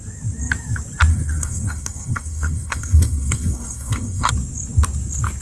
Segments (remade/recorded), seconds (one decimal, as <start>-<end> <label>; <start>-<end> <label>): 0.0-1.1 recorded; 1.1-4.3 remade; 4.3-5.4 recorded